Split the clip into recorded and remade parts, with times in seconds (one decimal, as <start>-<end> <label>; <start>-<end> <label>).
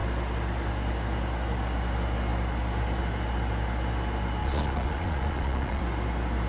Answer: 0.0-4.4 recorded; 4.4-5.8 remade; 5.8-6.5 recorded